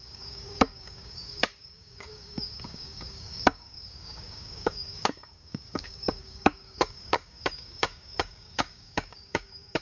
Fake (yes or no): yes